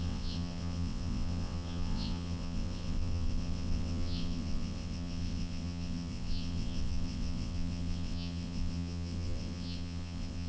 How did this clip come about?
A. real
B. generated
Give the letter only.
B